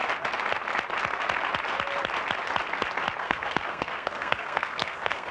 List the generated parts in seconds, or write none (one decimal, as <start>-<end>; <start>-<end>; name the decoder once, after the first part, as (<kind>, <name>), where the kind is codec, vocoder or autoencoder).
3.2-5.3 (codec, SNAC)